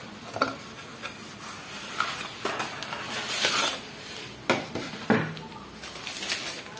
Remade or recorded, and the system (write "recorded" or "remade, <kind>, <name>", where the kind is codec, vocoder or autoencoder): recorded